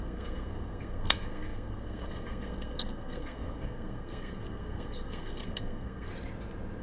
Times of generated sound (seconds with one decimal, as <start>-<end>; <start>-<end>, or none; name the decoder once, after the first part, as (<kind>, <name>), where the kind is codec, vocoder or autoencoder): 0.0-6.1 (codec, SNAC)